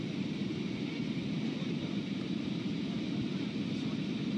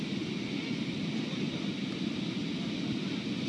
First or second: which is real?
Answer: second